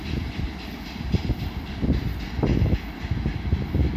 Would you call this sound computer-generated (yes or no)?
no